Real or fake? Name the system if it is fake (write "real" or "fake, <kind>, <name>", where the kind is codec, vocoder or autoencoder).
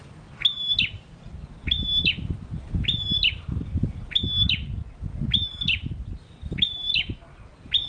real